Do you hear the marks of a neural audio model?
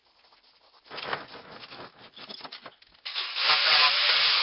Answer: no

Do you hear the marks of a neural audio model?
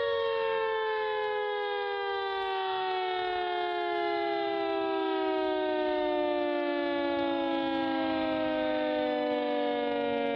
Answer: yes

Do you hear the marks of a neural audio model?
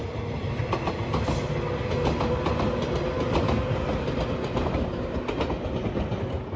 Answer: no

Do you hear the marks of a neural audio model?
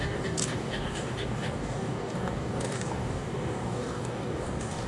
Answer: yes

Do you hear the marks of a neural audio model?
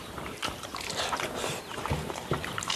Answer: yes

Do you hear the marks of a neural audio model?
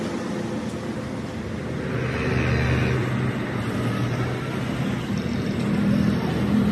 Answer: no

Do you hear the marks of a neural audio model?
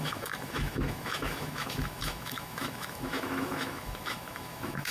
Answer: yes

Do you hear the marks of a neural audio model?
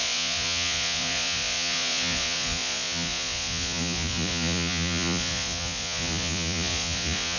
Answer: yes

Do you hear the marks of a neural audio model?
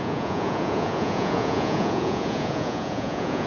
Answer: yes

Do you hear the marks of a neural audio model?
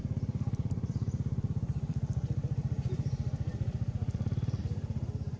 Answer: yes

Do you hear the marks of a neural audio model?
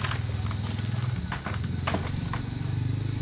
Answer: no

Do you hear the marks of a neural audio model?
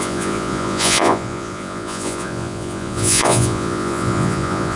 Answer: yes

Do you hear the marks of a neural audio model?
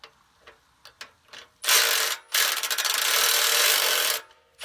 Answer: no